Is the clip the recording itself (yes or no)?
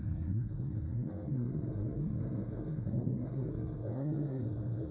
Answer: no